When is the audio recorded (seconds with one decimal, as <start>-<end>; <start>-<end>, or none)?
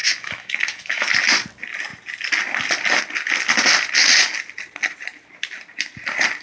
1.1-6.4